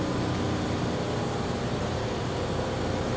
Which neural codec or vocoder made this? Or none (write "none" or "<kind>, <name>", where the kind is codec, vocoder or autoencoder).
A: none